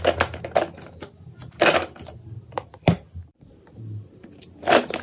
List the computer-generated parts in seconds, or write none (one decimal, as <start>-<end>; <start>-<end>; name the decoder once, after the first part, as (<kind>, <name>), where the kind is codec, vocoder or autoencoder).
1.4-4.4 (vocoder, BigVGAN v2)